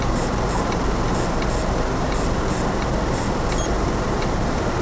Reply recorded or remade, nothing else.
recorded